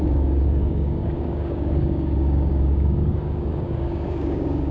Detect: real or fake fake